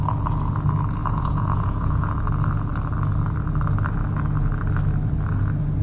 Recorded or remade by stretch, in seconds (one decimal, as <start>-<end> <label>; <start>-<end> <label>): 0.0-1.0 recorded; 1.0-2.1 remade; 2.1-5.8 recorded